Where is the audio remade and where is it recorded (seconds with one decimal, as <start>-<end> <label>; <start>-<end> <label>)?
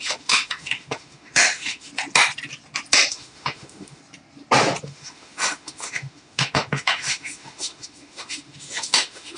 0.0-1.9 remade; 1.9-3.1 recorded; 3.1-4.0 remade; 4.0-4.8 recorded; 4.8-9.4 remade